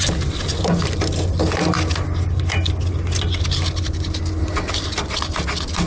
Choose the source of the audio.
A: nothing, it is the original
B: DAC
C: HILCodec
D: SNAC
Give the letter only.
A